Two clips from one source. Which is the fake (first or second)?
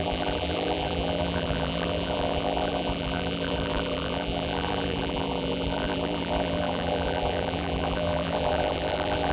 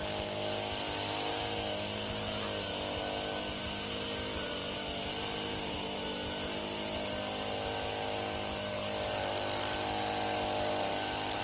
first